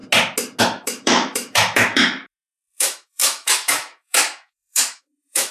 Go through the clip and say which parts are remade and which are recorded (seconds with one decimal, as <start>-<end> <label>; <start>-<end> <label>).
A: 0.0-0.6 recorded; 0.6-5.5 remade